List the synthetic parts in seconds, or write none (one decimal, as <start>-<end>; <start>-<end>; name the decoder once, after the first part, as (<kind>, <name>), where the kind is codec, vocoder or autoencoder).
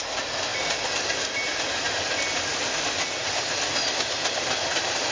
none